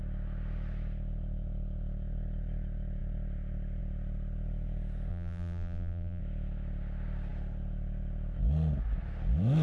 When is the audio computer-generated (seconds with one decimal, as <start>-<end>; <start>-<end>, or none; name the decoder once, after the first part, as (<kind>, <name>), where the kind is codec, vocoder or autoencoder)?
5.1-6.2 (vocoder, BigVGAN v2)